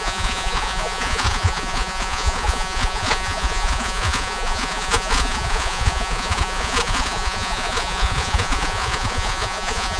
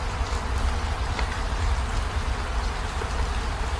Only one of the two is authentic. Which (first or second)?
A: second